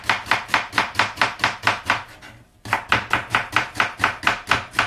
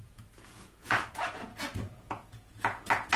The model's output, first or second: second